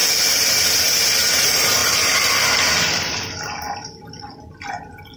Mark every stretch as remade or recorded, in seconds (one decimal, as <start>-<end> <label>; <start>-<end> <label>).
0.0-0.8 recorded; 0.8-1.8 remade; 1.8-5.2 recorded